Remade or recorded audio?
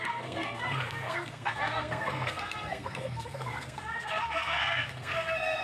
remade